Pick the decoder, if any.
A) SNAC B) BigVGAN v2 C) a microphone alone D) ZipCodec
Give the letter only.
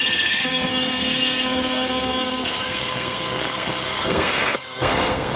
A